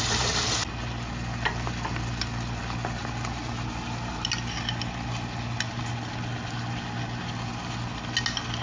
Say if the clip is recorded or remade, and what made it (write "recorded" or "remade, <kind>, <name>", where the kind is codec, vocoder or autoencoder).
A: recorded